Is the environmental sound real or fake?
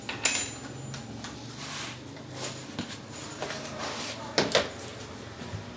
real